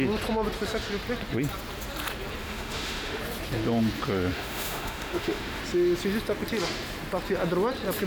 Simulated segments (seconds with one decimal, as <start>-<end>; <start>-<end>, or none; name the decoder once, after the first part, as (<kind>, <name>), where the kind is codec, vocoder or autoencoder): 2.4-3.2 (autoencoder, DAC-VAE); 4.3-5.6